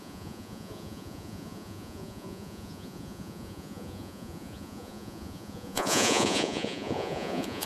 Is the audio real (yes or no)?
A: no